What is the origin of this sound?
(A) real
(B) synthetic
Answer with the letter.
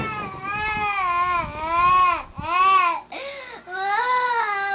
A